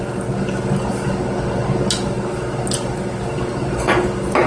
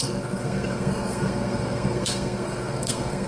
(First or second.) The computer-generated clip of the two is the second